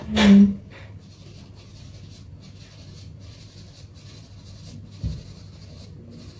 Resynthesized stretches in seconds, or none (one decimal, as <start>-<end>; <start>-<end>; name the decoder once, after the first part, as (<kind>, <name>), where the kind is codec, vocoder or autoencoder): none